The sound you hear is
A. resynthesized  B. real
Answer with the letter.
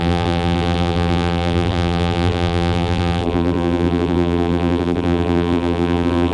A